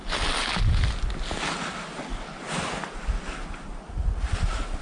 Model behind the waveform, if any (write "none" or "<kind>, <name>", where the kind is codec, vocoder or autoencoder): none